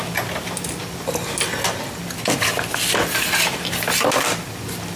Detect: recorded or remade recorded